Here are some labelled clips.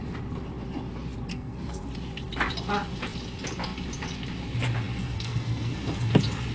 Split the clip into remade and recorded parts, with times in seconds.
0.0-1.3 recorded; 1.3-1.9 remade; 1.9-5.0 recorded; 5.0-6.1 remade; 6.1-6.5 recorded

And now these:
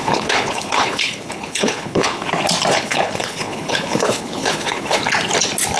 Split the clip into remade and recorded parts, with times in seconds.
0.0-2.3 remade; 2.3-2.7 recorded; 2.7-5.0 remade; 5.0-5.8 recorded

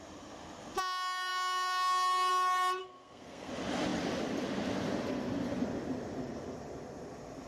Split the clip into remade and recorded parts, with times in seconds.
0.0-2.8 recorded; 2.8-3.5 remade; 3.5-7.5 recorded

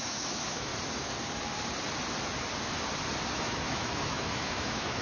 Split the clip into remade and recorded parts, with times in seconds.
0.0-0.7 remade; 0.7-3.3 recorded; 3.3-5.0 remade

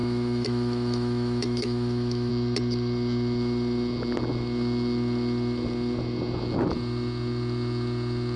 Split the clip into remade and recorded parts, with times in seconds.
0.0-2.3 remade; 2.3-8.4 recorded

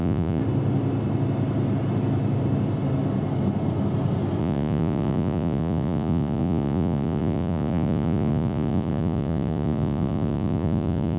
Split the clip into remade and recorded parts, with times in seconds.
0.0-0.4 remade; 0.4-4.4 recorded; 4.4-11.2 remade

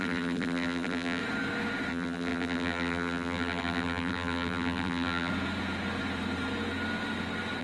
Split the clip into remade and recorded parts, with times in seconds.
0.0-1.2 remade; 1.2-1.9 recorded; 1.9-5.3 remade; 5.3-7.6 recorded

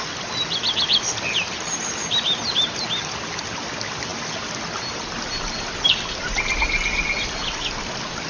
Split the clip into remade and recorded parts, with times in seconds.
0.0-8.3 recorded